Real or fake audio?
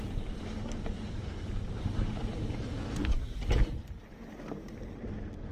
fake